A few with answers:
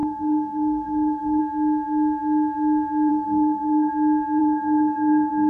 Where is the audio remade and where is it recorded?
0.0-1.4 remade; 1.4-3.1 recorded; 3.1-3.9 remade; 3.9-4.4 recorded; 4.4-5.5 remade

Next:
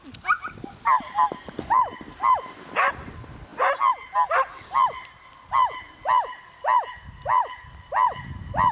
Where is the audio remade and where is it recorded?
0.0-8.7 recorded